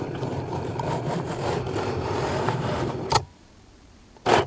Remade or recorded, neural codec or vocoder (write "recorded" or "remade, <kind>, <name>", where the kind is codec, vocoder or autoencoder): remade, vocoder, BigVGAN v2